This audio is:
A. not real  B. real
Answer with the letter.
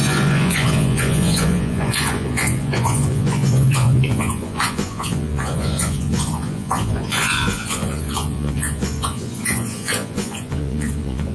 A